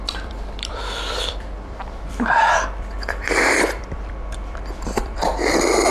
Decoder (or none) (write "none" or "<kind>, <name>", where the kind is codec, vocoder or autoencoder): vocoder, BigVGAN v2